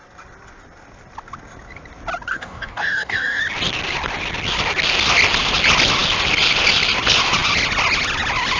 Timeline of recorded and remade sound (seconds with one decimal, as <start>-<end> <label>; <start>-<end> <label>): 0.0-2.3 recorded; 2.3-3.4 remade; 3.4-8.6 recorded